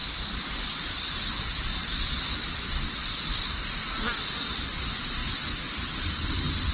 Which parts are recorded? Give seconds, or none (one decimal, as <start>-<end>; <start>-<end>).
5.2-6.0